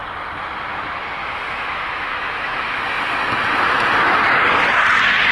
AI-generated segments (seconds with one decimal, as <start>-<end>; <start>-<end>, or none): 1.2-2.8